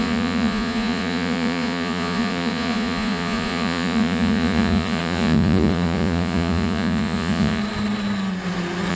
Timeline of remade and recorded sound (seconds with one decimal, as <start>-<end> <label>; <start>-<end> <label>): 0.0-7.6 remade; 7.6-8.9 recorded